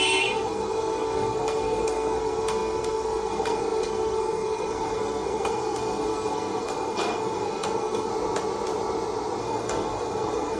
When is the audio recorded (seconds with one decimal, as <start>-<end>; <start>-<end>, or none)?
8.1-9.4